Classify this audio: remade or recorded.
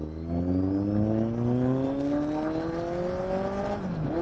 recorded